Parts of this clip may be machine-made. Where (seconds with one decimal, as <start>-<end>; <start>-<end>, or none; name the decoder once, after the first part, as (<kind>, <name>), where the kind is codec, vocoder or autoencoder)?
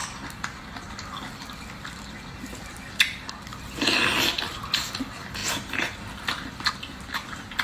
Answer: 3.5-4.5 (vocoder, BigVGAN v2)